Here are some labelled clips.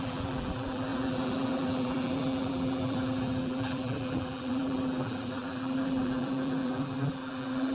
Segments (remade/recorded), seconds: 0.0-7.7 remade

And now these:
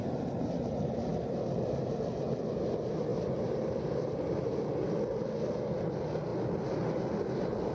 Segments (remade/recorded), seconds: 0.0-3.1 recorded; 3.1-4.6 remade; 4.6-7.7 recorded